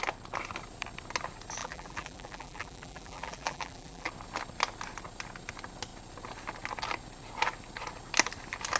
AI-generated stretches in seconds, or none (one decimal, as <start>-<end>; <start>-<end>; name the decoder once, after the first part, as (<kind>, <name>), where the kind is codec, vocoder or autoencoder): 1.6-4.1 (vocoder, BigVGAN v2)